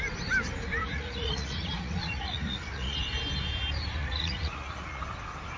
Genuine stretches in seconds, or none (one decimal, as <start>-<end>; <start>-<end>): 0.0-0.8; 3.0-4.0; 5.0-5.6